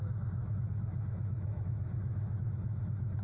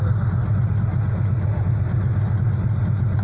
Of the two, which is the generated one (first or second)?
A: first